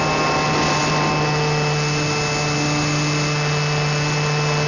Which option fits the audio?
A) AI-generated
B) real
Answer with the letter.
B